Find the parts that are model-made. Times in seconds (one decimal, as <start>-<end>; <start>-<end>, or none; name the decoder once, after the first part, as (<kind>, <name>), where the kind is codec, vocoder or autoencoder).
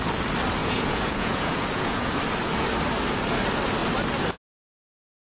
0.6-2.2 (vocoder, Vocos)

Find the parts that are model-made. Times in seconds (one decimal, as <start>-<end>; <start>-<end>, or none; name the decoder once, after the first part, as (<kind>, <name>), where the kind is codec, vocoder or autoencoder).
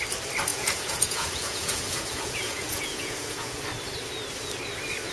0.5-3.6 (vocoder, Vocos)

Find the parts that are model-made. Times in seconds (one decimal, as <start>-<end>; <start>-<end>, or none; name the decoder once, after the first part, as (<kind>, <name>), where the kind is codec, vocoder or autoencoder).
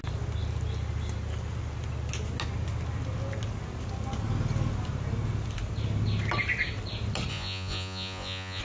7.3-8.6 (vocoder, Vocos)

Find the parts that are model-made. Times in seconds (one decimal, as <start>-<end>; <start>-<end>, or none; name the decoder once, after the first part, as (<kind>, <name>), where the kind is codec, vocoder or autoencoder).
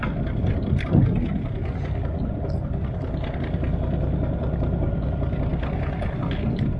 none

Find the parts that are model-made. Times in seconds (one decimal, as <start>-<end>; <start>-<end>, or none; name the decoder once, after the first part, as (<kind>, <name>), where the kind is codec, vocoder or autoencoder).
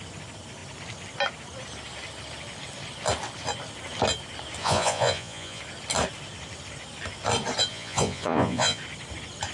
4.6-5.6 (vocoder, Vocos); 7.7-8.8